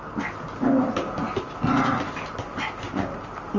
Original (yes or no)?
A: yes